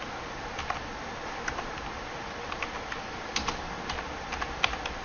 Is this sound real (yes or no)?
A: yes